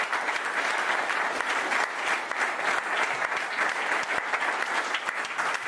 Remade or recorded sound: recorded